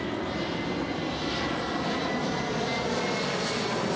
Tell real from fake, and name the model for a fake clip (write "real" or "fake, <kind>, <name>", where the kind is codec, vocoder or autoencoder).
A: real